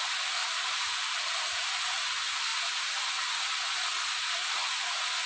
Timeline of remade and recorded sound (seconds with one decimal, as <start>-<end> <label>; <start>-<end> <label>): 0.0-0.4 recorded; 0.4-1.9 remade; 1.9-5.3 recorded